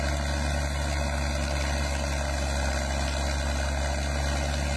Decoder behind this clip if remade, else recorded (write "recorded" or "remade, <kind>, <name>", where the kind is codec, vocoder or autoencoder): recorded